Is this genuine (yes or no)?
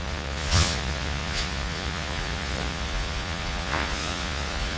no